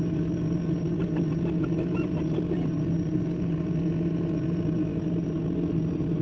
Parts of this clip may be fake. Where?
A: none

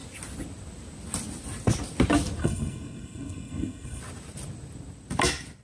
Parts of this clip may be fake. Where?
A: 2.4-4.0 (codec, SNAC)

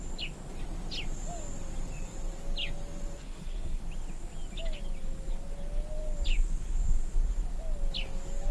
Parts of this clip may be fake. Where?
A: 3.2-3.8 (codec, SNAC)

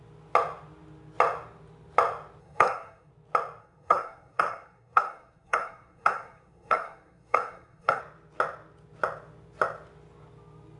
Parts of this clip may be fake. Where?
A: 2.4-3.1 (codec, SNAC); 3.6-8.0

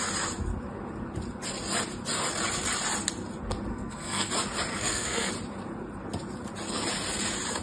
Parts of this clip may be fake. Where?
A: 3.7-4.3 (codec, SNAC); 4.7-5.3